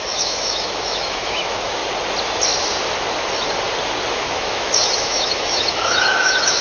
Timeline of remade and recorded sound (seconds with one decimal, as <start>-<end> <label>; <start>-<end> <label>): 0.0-1.8 remade; 1.8-4.1 recorded; 4.1-6.6 remade